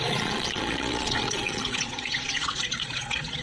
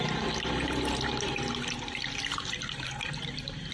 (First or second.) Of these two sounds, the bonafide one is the second